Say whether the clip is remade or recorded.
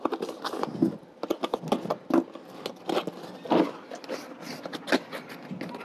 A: recorded